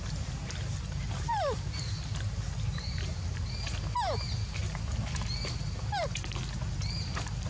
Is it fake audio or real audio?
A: real